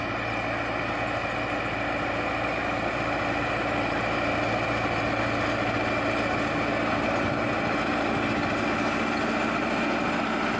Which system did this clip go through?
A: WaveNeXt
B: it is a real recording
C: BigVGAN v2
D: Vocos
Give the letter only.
B